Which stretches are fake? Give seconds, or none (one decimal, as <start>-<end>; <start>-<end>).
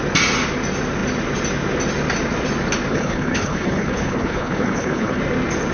2.9-5.2